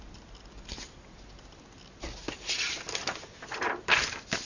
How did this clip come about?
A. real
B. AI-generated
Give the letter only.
A